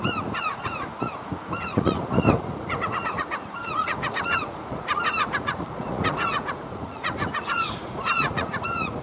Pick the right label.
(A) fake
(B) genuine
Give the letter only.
A